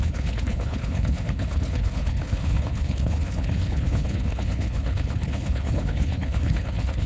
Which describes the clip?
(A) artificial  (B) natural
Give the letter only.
A